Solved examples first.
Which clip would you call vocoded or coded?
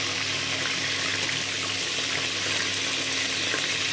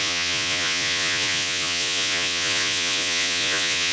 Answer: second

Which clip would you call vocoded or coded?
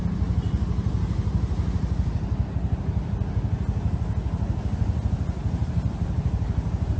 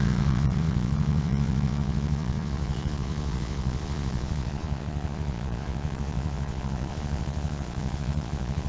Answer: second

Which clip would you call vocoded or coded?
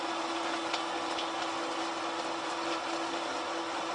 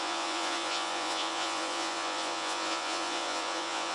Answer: second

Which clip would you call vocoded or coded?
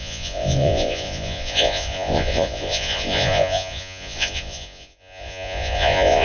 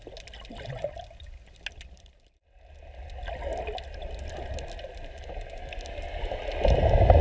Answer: first